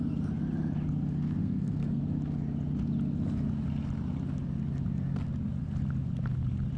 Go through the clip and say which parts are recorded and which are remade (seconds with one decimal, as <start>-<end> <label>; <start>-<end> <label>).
0.0-1.4 recorded; 1.4-2.0 remade; 2.0-6.8 recorded